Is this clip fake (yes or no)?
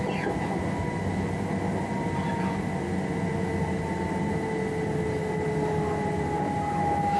no